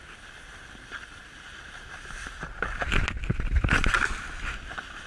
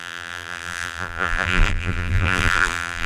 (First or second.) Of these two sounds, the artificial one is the second